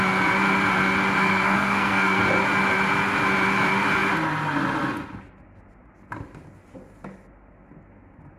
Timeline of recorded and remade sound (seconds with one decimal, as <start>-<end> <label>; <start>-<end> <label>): 0.0-1.2 recorded; 1.2-2.2 remade; 2.2-8.4 recorded